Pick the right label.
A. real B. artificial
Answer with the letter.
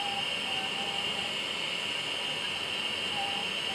A